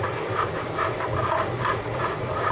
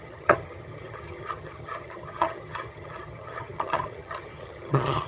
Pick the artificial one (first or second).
second